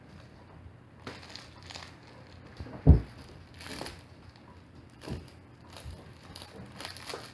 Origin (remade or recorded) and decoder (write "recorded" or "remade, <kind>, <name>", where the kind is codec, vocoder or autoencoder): recorded